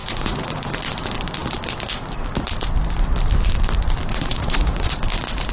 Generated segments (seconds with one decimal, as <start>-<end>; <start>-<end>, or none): 0.0-0.8; 4.1-4.9